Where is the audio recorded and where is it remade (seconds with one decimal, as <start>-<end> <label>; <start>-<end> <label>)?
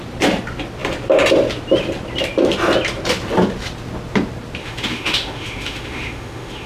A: 0.0-4.6 recorded; 4.6-6.7 remade